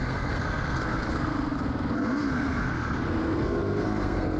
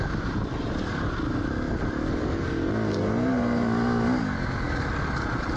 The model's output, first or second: first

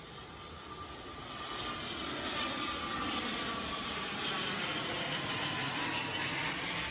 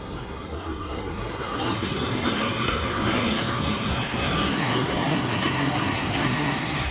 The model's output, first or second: second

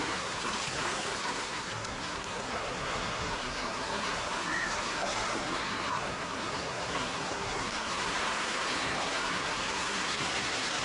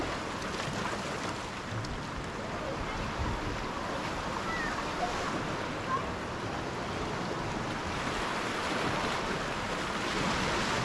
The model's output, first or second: first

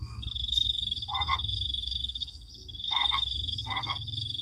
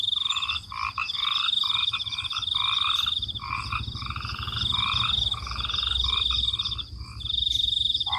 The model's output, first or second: first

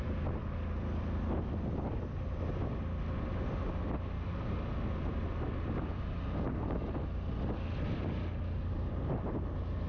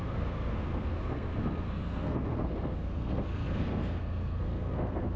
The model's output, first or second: second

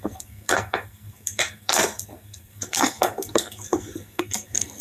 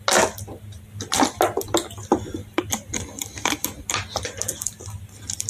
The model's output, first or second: first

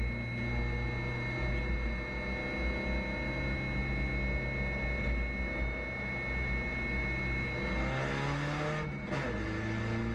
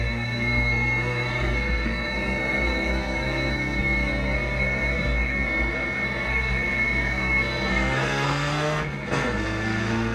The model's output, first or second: second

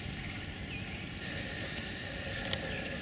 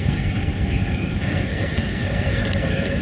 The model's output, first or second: second